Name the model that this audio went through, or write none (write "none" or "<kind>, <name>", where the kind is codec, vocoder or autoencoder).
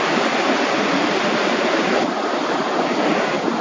vocoder, BigVGAN v2